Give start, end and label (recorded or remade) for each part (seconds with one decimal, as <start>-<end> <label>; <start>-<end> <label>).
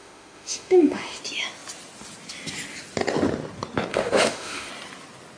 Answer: 0.0-1.2 remade; 1.2-3.9 recorded; 3.9-4.7 remade; 4.7-5.4 recorded